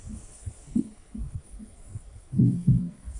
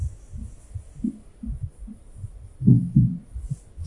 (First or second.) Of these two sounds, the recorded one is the second